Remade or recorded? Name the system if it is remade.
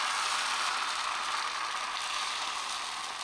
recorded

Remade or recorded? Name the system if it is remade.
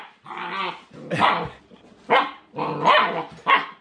recorded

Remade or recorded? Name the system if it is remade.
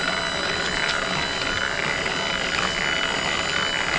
recorded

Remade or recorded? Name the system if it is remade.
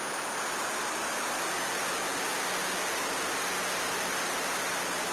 recorded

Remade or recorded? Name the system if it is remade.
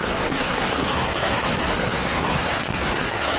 remade, codec, SNAC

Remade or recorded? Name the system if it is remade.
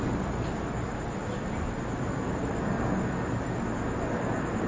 recorded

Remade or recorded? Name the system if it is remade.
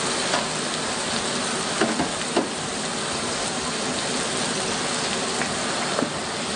recorded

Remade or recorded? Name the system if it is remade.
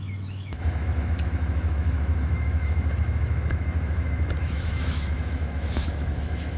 remade, autoencoder, DAC-VAE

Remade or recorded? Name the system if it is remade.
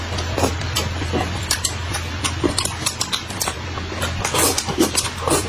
remade, vocoder, BigVGAN v2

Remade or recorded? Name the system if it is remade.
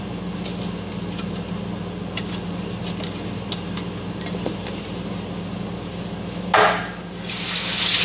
recorded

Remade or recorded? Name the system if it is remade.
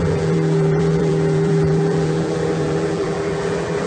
remade, vocoder, BigVGAN v2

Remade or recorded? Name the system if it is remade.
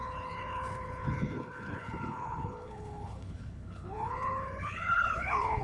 remade, codec, HILCodec